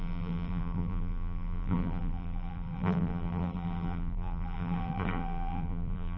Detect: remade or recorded remade